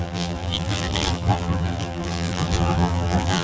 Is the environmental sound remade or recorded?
remade